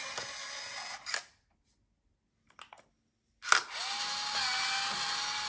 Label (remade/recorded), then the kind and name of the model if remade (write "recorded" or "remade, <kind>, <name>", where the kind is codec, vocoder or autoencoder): recorded